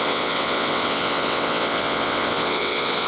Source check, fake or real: fake